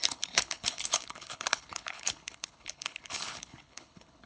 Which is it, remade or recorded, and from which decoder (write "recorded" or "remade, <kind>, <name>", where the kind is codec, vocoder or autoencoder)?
remade, codec, HILCodec